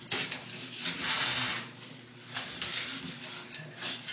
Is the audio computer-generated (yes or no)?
no